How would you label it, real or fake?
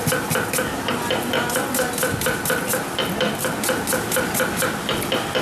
real